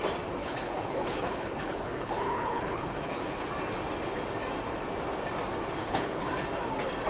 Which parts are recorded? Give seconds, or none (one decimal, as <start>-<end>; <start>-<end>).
0.0-0.4; 3.5-5.8; 6.3-7.1